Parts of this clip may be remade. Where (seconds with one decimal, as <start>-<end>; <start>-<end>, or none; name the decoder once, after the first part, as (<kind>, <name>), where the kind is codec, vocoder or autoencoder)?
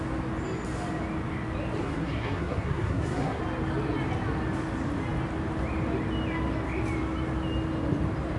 1.8-3.4 (codec, SNAC)